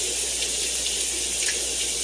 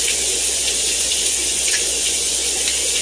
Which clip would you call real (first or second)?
first